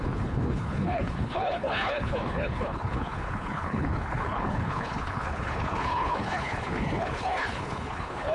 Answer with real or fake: fake